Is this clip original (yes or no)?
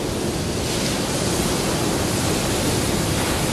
yes